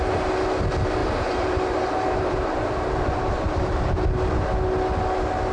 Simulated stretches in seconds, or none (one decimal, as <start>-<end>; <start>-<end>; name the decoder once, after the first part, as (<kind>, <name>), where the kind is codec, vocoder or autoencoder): 1.0-4.3 (vocoder, BigVGAN v2)